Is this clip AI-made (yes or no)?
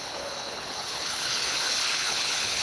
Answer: yes